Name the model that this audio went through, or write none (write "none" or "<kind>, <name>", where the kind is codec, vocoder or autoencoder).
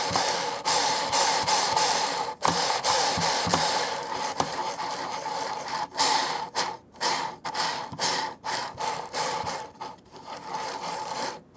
vocoder, BigVGAN v2